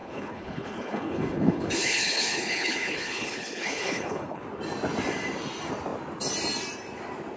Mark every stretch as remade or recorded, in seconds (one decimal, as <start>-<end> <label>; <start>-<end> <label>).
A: 0.0-4.4 remade; 4.4-7.4 recorded